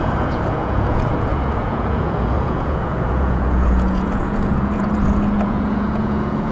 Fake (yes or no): yes